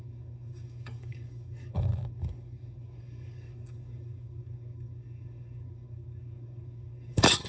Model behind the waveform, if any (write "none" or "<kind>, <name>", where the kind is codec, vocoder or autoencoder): codec, DAC